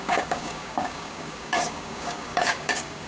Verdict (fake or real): fake